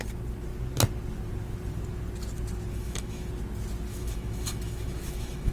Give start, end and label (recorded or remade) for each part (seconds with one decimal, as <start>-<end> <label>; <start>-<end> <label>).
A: 0.0-2.7 recorded; 2.7-3.3 remade; 3.3-3.9 recorded; 3.9-5.5 remade